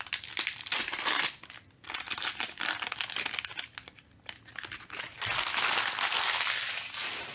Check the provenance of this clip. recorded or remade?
recorded